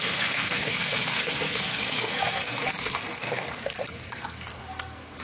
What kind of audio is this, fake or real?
fake